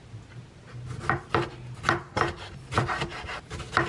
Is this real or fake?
real